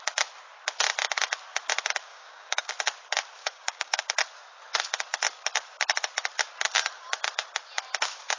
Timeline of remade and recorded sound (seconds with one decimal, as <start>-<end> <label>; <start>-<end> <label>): 0.0-2.1 recorded; 2.1-2.7 remade; 2.7-3.4 recorded; 3.4-4.0 remade; 4.0-8.4 recorded